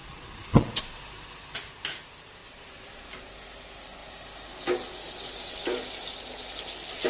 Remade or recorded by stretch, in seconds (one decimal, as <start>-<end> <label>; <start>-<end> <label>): 0.0-0.8 remade; 0.8-2.4 recorded; 2.4-3.1 remade; 3.1-7.1 recorded